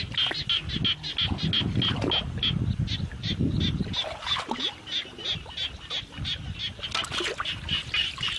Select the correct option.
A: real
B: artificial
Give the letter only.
A